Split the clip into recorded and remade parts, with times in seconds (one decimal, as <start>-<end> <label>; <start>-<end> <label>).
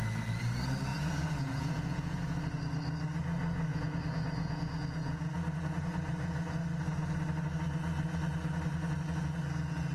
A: 0.0-0.9 recorded; 0.9-2.2 remade; 2.2-3.7 recorded; 3.7-6.5 remade; 6.5-9.9 recorded